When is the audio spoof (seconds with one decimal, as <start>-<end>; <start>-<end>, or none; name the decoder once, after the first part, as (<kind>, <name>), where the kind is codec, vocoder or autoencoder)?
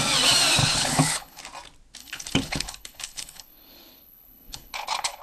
0.6-1.4 (codec, HILCodec); 2.0-5.2